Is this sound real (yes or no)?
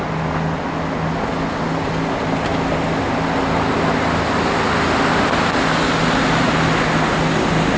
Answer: yes